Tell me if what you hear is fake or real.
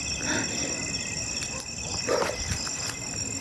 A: real